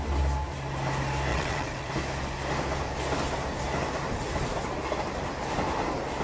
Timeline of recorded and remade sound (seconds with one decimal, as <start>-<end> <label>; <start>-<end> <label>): 0.0-1.3 recorded; 1.3-1.9 remade; 1.9-6.2 recorded